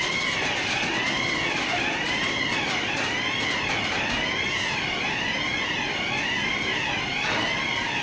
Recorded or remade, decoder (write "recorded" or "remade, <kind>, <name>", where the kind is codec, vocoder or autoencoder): recorded